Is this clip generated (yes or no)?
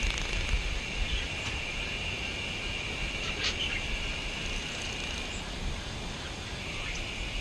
no